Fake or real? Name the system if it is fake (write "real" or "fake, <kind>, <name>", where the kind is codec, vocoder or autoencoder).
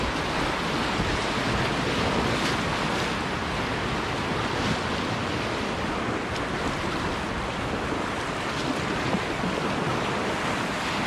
real